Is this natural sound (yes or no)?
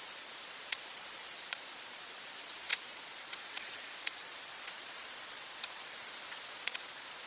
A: no